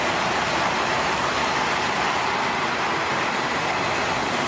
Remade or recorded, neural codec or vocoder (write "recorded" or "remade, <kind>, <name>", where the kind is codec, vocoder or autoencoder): recorded